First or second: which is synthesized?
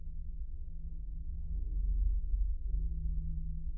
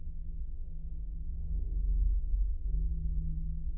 second